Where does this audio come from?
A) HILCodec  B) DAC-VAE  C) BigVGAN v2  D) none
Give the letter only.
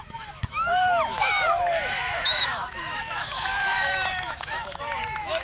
B